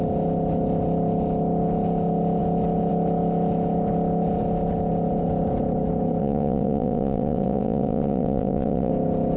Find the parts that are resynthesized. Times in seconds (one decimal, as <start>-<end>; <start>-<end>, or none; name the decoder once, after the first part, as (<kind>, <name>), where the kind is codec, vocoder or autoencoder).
6.2-8.9 (vocoder, WaveNeXt)